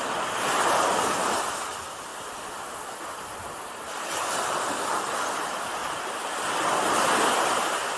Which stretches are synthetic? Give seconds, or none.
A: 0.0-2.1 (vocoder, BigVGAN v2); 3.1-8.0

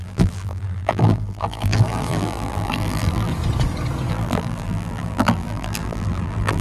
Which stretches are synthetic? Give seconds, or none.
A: 0.0-3.3 (vocoder, BigVGAN v2); 4.1-6.6

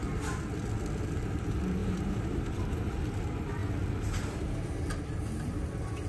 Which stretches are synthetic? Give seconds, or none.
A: 1.8-3.0 (vocoder, BigVGAN v2)

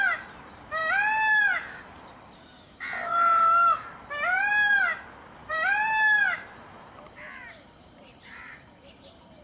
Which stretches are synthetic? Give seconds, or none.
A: 0.0-0.8 (vocoder, BigVGAN v2); 1.4-4.9; 5.5-9.4

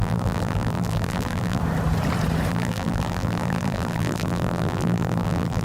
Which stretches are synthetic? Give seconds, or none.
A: 0.0-1.6 (vocoder, BigVGAN v2); 2.5-5.6

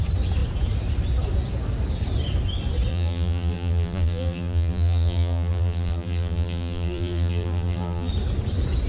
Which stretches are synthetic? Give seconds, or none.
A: 2.9-8.1 (vocoder, BigVGAN v2)

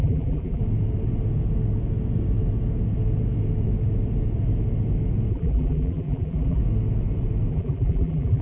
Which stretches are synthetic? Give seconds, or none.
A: 0.0-0.6 (vocoder, BigVGAN v2); 5.3-6.6; 7.5-8.4

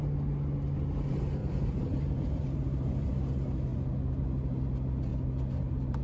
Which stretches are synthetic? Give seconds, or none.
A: 1.4-3.2 (vocoder, BigVGAN v2)